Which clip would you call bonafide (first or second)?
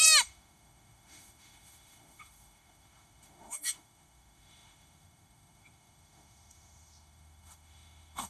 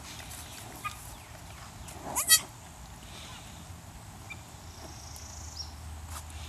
second